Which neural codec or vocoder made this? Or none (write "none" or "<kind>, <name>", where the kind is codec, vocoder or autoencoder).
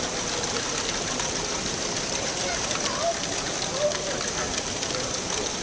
none